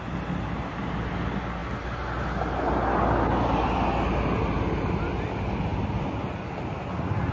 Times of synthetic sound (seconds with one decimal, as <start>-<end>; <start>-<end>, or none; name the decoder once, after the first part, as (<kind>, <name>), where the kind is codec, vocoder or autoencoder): none